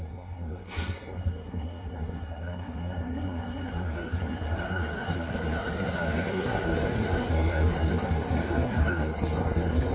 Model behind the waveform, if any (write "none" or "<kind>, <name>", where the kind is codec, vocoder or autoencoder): codec, SNAC